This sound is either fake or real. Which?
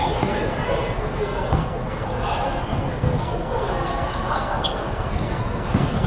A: fake